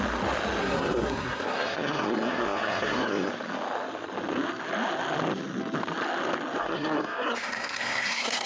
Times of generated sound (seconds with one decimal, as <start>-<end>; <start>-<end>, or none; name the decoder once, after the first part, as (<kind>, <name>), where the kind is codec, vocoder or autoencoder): 0.6-3.3 (codec, SNAC); 6.6-8.5